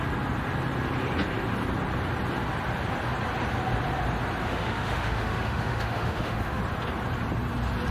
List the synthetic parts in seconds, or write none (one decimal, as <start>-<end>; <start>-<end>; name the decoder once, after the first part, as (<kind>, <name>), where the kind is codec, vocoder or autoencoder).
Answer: 4.4-6.6 (autoencoder, DAC-VAE)